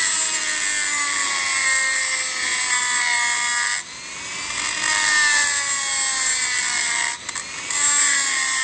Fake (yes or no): no